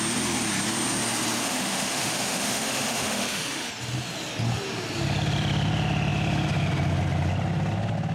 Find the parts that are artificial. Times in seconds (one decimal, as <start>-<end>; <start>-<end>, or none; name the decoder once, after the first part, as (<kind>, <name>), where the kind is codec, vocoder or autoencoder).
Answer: 1.4-3.7 (autoencoder, DAC-VAE)